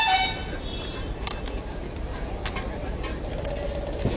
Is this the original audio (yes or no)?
yes